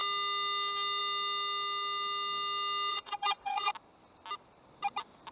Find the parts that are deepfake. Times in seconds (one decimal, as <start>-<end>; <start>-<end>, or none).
2.9-3.7